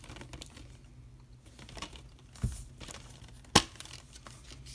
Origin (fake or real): real